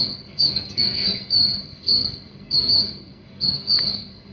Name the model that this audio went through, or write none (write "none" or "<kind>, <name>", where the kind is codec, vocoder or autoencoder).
codec, SNAC